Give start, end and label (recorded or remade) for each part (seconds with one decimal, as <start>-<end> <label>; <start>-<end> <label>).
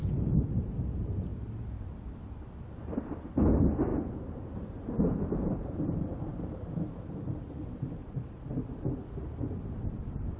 0.0-0.9 remade; 0.9-3.9 recorded; 3.9-8.4 remade; 8.4-10.4 recorded